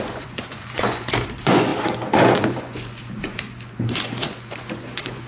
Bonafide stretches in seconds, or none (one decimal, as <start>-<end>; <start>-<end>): none